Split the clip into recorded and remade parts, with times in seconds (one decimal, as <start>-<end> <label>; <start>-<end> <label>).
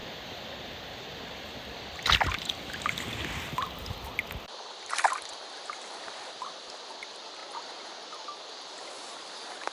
0.0-9.7 recorded